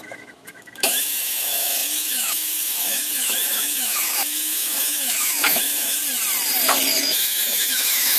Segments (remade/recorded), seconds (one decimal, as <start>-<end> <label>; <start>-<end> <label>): 0.0-6.0 remade; 6.0-7.0 recorded; 7.0-8.2 remade